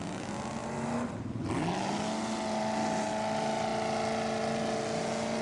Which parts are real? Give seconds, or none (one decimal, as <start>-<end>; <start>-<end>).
0.0-5.4